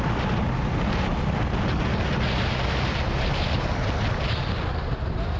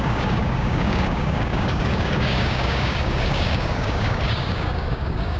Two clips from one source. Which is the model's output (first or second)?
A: second